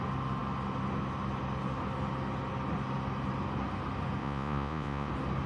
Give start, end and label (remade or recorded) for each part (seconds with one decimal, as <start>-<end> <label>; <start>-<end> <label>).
0.0-4.2 recorded; 4.2-5.1 remade; 5.1-5.5 recorded